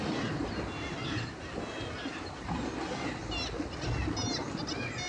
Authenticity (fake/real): real